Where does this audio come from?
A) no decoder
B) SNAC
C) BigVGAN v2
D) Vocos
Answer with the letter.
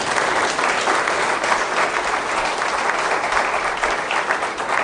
A